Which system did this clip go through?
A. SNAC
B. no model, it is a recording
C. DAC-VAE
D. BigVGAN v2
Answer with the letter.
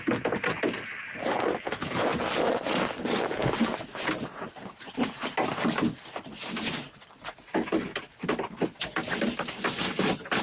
B